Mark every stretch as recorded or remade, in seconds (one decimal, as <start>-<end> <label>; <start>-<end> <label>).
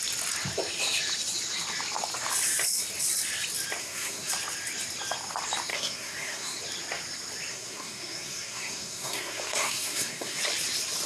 0.0-3.8 recorded; 3.8-4.3 remade; 4.3-5.7 recorded; 5.7-6.6 remade; 6.6-7.5 recorded; 7.5-10.4 remade; 10.4-11.1 recorded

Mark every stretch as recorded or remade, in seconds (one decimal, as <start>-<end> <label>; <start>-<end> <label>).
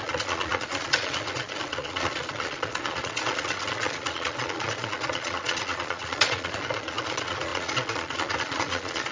0.0-9.1 remade